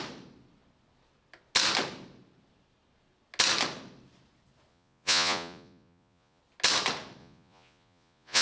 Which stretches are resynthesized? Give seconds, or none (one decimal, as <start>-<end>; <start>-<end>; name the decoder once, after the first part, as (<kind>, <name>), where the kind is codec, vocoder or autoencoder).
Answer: 4.7-6.4 (vocoder, Vocos); 7.2-8.4